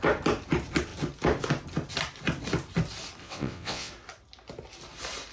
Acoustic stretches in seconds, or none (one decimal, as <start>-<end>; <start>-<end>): 0.0-3.2; 3.9-5.3